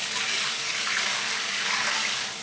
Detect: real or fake fake